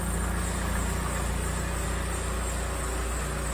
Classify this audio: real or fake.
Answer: real